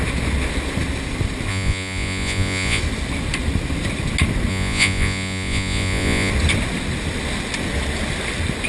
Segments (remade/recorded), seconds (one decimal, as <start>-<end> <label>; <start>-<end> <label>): 0.0-1.5 recorded; 1.5-2.8 remade; 2.8-4.5 recorded; 4.5-6.3 remade; 6.3-8.7 recorded